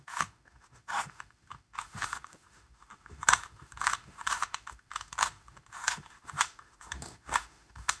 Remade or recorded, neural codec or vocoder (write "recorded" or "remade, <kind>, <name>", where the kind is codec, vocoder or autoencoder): remade, autoencoder, DAC-VAE